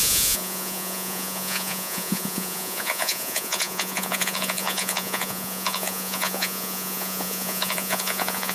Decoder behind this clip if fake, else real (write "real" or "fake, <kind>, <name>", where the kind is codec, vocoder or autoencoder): fake, vocoder, Vocos